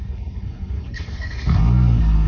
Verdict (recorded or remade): remade